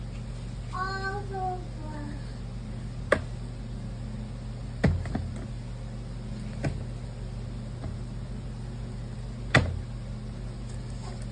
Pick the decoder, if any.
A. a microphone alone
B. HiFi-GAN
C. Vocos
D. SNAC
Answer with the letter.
A